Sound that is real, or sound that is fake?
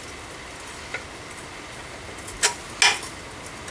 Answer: real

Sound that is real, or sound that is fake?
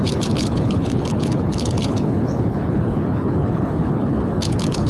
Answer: fake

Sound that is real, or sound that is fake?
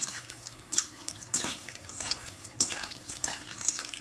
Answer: fake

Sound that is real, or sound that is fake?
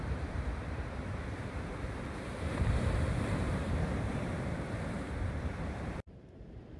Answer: fake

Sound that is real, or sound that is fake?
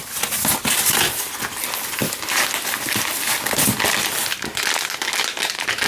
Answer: real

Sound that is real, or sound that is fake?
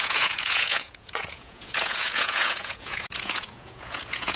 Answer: fake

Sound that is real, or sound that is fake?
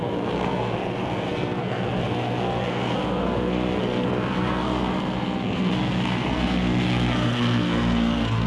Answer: fake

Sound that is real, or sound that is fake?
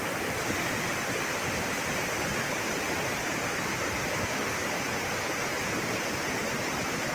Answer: real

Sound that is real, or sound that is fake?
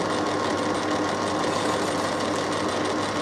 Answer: real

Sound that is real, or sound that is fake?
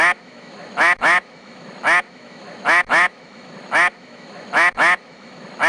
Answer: fake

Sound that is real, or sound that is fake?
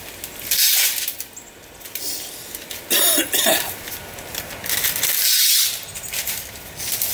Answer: real